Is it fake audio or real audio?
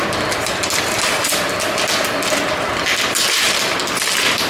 real